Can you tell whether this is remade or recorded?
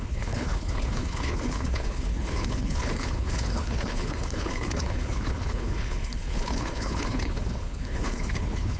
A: remade